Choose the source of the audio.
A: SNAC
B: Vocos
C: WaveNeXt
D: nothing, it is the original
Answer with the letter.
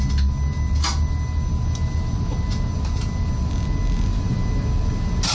D